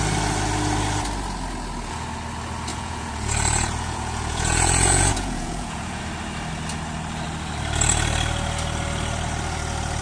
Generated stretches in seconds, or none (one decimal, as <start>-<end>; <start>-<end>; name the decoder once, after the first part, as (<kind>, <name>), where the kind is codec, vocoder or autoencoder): 2.7-6.0 (vocoder, Vocos)